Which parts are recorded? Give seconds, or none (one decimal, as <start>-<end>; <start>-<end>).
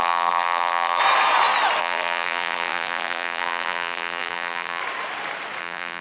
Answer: 1.0-1.8; 4.8-5.6